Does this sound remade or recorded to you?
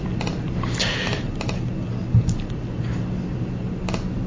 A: recorded